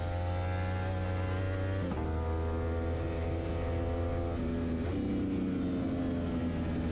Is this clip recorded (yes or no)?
yes